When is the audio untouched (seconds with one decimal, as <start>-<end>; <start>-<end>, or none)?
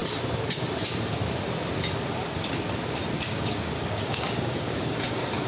0.0-3.2